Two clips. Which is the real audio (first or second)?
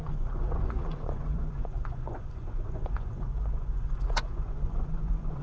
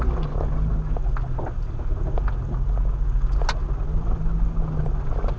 second